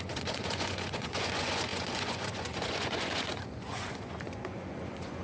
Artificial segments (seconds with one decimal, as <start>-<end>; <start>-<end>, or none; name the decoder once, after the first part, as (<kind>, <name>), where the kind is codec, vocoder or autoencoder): 0.0-5.2 (vocoder, Vocos)